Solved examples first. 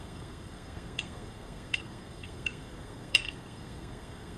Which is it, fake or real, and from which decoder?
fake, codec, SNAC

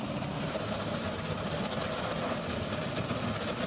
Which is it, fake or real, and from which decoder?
real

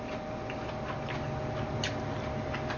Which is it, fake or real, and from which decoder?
real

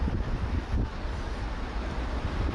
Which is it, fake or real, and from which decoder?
fake, vocoder, BigVGAN v2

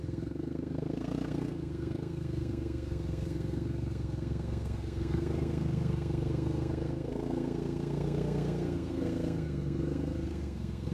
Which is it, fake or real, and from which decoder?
fake, codec, SNAC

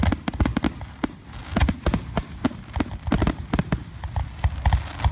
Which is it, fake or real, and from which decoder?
real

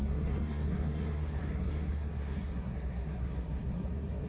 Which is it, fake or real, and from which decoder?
fake, codec, SNAC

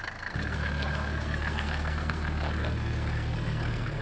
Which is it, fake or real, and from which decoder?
fake, codec, SNAC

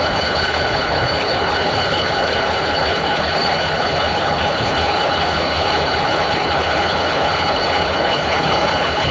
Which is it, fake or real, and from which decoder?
fake, codec, HILCodec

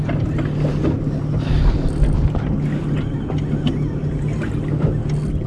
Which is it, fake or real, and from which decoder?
real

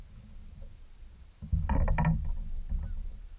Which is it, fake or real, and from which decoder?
real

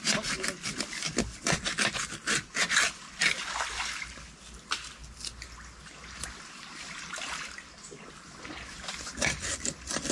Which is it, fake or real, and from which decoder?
real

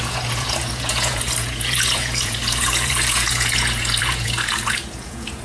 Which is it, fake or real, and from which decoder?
fake, vocoder, Vocos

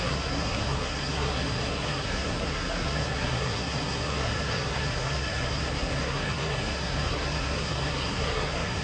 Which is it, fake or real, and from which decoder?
fake, codec, SNAC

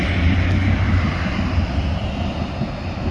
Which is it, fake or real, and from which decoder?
real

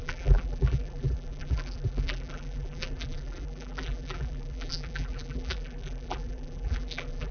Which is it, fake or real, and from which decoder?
fake, vocoder, BigVGAN v2